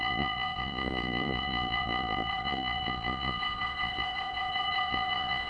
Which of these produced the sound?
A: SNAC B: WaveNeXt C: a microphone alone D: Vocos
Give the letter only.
D